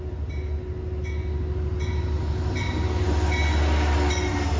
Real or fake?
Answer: real